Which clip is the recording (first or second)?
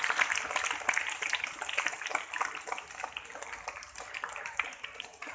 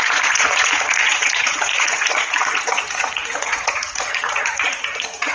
first